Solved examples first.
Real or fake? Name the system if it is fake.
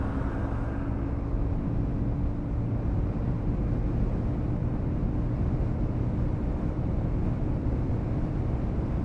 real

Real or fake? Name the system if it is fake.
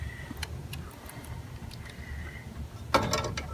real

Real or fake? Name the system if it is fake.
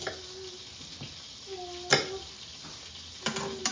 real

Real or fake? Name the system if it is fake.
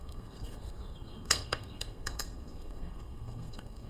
fake, codec, SNAC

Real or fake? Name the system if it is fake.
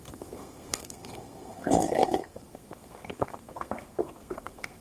fake, codec, SNAC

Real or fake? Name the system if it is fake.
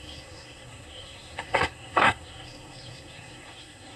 fake, codec, SNAC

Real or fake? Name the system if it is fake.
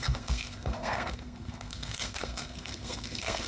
fake, codec, SNAC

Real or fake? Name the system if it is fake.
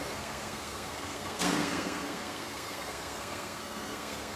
fake, codec, SNAC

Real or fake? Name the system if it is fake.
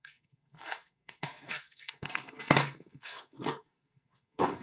fake, codec, SNAC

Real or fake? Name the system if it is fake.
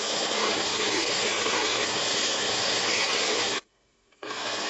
fake, codec, SNAC